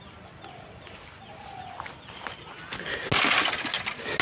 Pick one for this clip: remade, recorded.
recorded